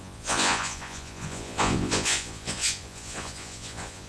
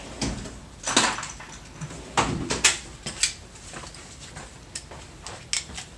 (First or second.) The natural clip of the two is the second